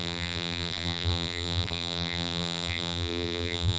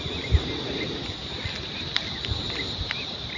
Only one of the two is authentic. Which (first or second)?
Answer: second